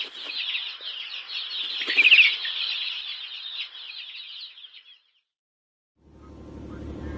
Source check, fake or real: real